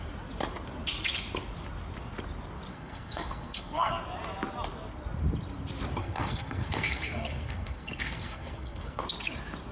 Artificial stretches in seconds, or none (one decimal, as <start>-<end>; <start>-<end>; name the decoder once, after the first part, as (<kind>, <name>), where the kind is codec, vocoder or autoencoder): 2.7-3.9 (codec, SNAC); 6.0-9.0